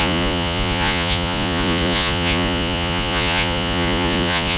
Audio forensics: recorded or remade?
remade